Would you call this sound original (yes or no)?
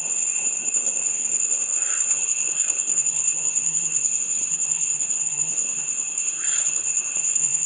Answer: no